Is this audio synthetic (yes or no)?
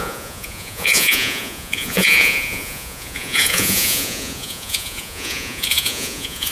yes